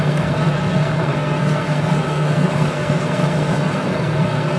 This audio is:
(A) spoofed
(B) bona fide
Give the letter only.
A